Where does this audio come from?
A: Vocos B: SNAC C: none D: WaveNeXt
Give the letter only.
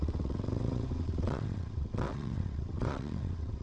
D